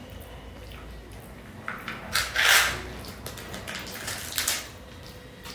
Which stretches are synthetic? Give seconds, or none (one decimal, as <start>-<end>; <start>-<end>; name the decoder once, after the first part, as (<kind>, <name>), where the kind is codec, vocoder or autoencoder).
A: none